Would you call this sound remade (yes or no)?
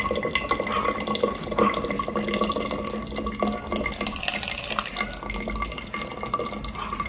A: no